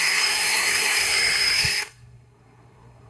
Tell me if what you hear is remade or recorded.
remade